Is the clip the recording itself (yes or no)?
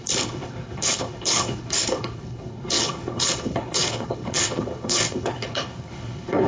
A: no